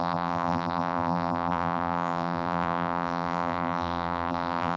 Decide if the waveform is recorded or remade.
remade